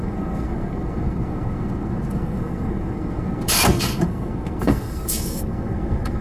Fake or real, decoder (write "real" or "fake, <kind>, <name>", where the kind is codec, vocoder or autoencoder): fake, codec, SNAC